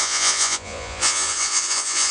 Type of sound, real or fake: fake